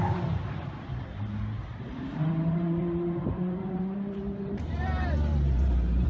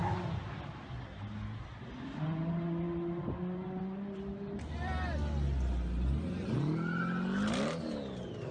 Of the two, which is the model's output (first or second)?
first